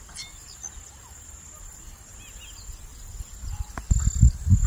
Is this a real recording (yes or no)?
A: yes